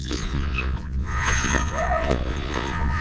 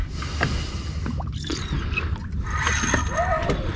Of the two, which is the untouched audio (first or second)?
second